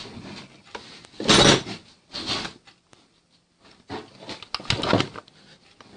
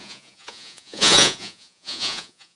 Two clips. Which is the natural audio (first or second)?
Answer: first